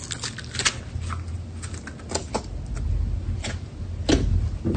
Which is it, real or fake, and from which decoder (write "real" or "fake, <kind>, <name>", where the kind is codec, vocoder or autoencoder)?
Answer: real